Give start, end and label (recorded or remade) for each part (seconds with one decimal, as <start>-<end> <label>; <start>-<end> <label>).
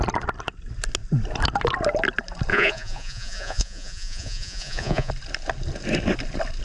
0.0-2.5 recorded; 2.5-5.1 remade; 5.1-6.6 recorded